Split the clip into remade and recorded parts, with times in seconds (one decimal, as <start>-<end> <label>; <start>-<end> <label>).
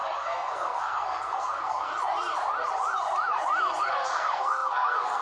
0.0-1.9 remade; 1.9-3.8 recorded; 3.8-5.2 remade